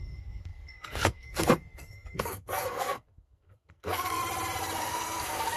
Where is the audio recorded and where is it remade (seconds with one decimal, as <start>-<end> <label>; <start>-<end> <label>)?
0.0-4.2 remade; 4.2-4.8 recorded; 4.8-5.6 remade